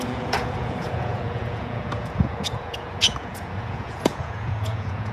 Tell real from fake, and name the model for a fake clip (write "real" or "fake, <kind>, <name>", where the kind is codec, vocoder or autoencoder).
fake, vocoder, Vocos